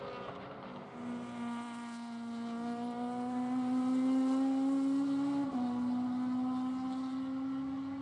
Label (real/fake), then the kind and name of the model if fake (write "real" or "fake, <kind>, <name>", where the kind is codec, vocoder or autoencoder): real